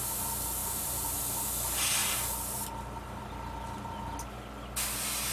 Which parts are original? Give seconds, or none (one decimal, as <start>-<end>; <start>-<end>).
0.0-0.6; 1.2-5.3